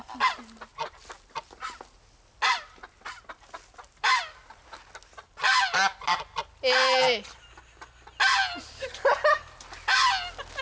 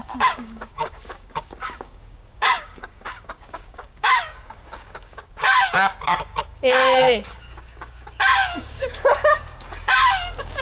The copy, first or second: second